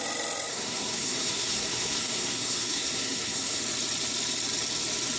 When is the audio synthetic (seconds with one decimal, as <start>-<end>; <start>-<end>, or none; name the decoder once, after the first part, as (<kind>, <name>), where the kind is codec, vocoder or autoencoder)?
0.5-3.6 (codec, SNAC)